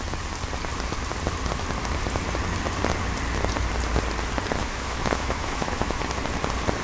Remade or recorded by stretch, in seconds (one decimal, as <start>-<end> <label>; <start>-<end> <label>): 0.0-4.6 recorded; 4.6-6.0 remade; 6.0-6.8 recorded